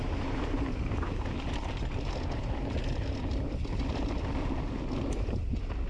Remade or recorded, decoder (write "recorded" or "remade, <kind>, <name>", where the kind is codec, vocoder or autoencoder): recorded